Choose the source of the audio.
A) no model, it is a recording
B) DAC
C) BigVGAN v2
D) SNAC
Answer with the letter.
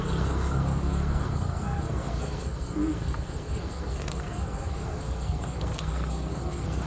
D